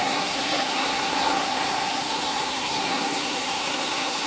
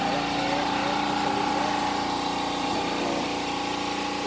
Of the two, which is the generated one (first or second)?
first